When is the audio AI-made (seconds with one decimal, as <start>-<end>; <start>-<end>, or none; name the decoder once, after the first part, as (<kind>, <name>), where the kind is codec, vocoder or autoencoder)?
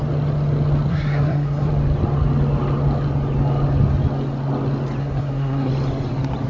0.9-1.7 (codec, SNAC); 5.0-5.7